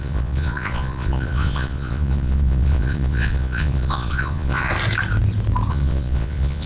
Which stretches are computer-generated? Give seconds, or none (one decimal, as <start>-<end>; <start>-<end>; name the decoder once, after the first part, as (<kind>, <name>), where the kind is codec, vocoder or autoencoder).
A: 0.0-4.7 (vocoder, Vocos); 5.7-6.7